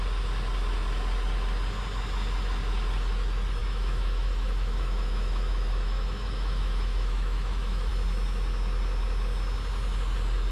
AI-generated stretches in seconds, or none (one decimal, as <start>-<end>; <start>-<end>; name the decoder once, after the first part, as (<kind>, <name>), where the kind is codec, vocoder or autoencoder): 3.6-7.9 (autoencoder, DAC-VAE)